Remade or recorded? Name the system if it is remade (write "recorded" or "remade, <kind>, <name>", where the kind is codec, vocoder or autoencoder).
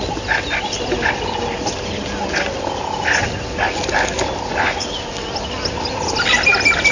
recorded